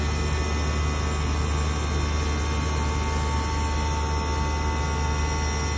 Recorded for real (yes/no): yes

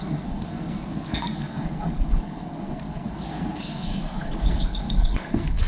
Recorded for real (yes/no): no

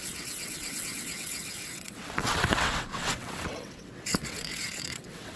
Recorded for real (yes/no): no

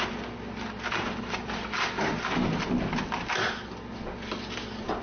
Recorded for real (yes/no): yes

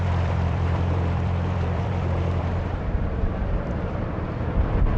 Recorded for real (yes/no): no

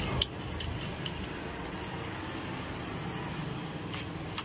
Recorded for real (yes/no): yes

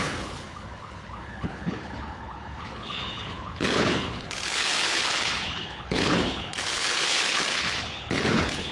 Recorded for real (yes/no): no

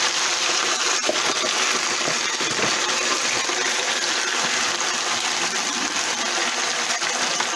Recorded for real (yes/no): yes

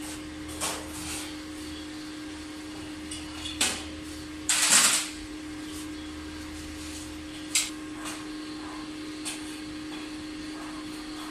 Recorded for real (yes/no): no